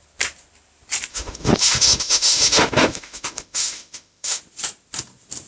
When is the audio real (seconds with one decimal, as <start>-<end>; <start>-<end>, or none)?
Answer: 0.0-1.1; 4.4-5.5